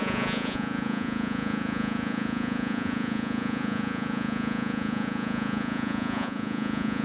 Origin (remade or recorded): remade